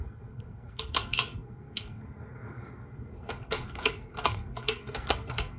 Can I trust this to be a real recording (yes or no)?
no